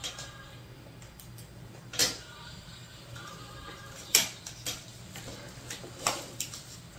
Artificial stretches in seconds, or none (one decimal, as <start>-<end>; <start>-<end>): 2.0-3.3